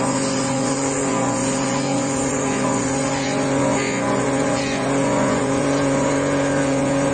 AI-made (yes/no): yes